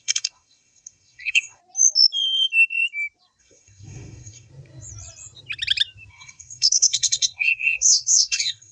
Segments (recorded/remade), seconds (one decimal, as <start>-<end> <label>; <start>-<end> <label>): 0.0-1.6 remade; 1.6-3.4 recorded; 3.4-4.5 remade; 4.5-6.1 recorded; 6.1-8.7 remade